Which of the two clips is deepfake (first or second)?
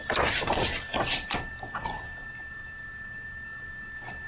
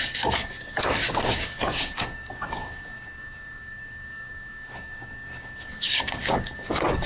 second